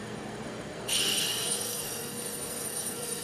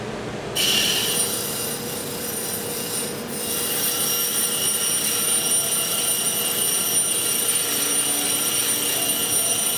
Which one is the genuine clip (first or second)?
second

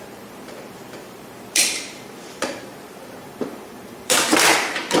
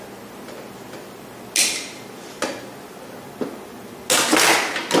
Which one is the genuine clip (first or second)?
second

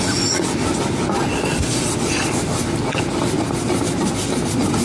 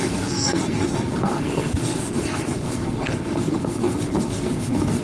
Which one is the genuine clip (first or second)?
first